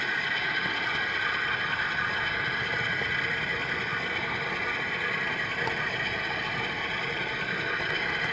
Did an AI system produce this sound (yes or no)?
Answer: no